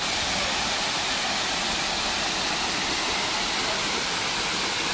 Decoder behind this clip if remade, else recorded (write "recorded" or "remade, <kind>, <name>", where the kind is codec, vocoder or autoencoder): recorded